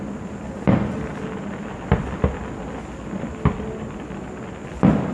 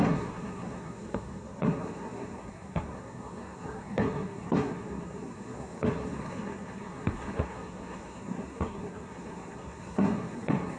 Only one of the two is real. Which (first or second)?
first